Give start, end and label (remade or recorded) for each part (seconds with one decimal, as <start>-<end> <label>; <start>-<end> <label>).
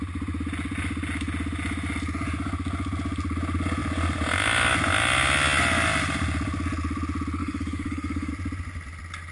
0.0-7.4 recorded; 7.4-8.3 remade; 8.3-9.3 recorded